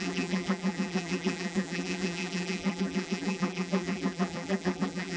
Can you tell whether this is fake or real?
fake